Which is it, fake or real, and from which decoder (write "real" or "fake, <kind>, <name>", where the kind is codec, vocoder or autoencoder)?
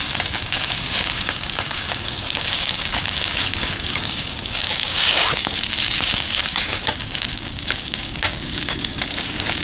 fake, codec, DAC